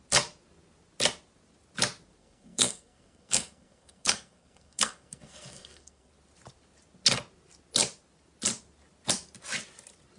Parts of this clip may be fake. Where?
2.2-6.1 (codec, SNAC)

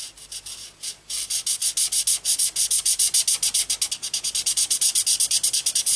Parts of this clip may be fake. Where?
none

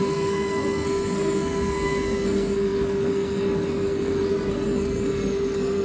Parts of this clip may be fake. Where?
0.0-5.8 (codec, SNAC)